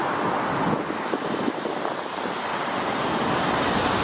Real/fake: real